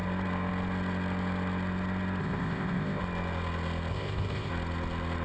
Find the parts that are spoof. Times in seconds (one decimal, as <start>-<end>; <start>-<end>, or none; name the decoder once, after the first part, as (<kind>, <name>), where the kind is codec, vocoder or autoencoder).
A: 2.2-3.0 (codec, ZipCodec); 3.9-4.5